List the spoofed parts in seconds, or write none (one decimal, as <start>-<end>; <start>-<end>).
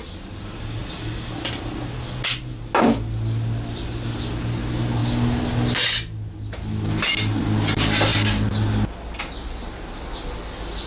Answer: none